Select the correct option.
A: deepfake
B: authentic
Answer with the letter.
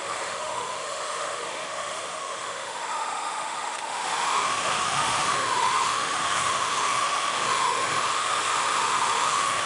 A